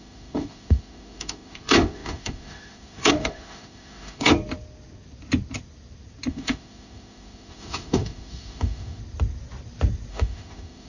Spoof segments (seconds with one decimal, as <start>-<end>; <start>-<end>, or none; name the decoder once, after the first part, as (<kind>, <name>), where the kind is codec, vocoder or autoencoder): 0.0-4.3 (autoencoder, DAC-VAE); 6.3-9.0; 10.1-10.9